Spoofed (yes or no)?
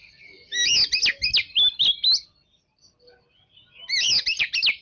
no